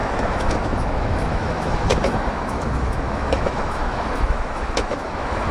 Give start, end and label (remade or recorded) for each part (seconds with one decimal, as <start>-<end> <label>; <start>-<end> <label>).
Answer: 0.0-5.5 remade